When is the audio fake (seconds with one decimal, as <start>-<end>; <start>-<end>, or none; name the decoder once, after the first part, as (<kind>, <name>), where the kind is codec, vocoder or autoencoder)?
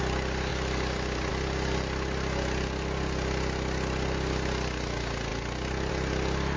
none